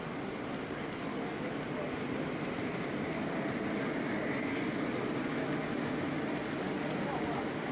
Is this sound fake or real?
real